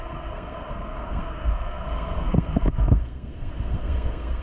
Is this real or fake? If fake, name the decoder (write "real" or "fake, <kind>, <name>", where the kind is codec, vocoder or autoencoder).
fake, codec, SNAC